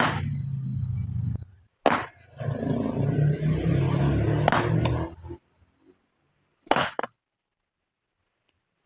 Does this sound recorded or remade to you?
recorded